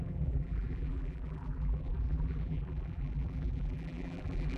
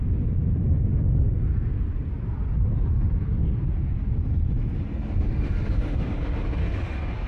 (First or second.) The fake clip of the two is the first